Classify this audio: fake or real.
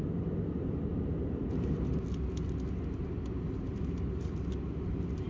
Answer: real